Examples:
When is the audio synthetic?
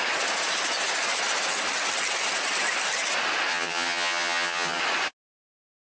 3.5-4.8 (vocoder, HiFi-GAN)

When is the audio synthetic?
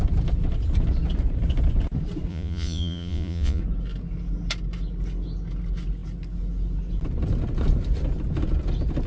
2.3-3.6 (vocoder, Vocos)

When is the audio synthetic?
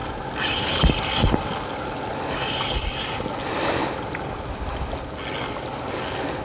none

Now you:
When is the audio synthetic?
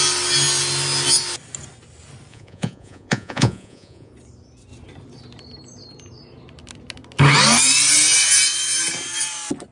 2.3-4.1 (vocoder, Vocos)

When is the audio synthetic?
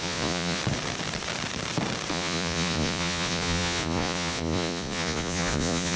0.0-0.6 (vocoder, Vocos); 2.1-6.0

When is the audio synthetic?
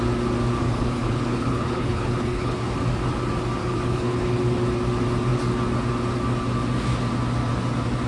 0.6-2.6 (codec, HILCodec); 3.6-4.4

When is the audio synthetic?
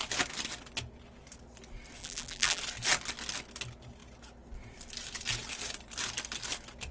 2.0-2.6 (vocoder, BigVGAN v2)